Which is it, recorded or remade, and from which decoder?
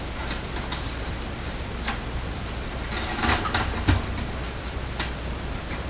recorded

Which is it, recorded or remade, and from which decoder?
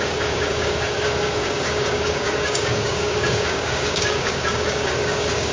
remade, codec, DAC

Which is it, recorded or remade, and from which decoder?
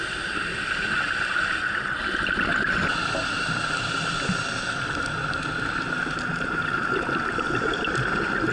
recorded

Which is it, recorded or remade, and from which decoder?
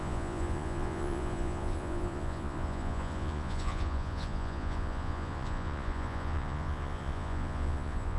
remade, vocoder, Vocos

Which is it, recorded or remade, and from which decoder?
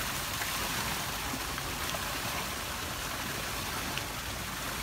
recorded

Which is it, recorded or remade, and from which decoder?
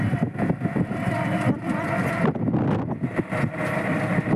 recorded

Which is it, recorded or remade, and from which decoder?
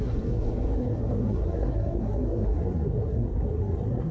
remade, codec, SNAC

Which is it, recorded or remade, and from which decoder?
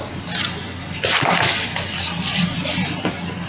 remade, vocoder, BigVGAN v2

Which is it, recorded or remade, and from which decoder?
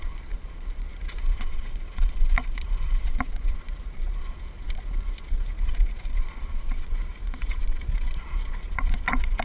remade, vocoder, Vocos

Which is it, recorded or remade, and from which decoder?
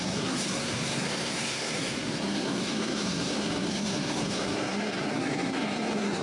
remade, codec, SNAC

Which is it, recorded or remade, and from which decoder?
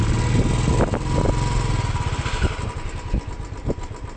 recorded